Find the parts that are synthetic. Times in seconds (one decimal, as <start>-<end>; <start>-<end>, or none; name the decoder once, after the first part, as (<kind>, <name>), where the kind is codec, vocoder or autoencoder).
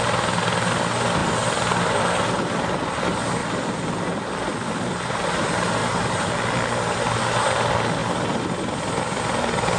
3.4-4.3 (vocoder, BigVGAN v2)